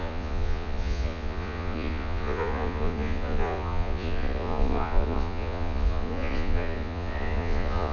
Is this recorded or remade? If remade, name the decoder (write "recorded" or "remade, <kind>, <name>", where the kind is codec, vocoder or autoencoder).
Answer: remade, vocoder, Vocos